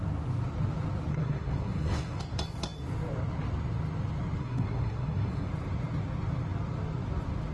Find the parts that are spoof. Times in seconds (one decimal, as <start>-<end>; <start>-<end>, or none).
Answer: 1.1-2.2; 4.4-5.5